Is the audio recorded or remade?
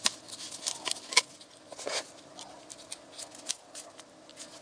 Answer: recorded